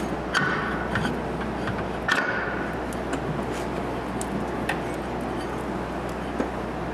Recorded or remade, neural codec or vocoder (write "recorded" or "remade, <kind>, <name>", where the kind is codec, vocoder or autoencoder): recorded